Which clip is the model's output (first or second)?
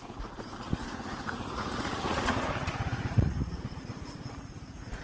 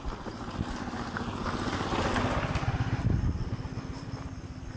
first